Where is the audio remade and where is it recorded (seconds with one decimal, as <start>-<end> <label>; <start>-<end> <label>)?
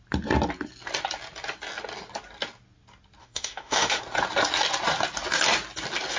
0.0-3.2 recorded; 3.2-4.0 remade; 4.0-6.2 recorded